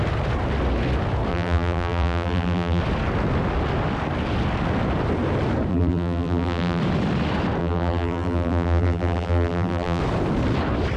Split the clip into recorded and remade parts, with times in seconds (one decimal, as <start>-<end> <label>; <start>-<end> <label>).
0.0-1.3 recorded; 1.3-2.8 remade; 2.8-5.7 recorded; 5.7-6.8 remade; 6.8-7.6 recorded; 7.6-10.0 remade; 10.0-11.0 recorded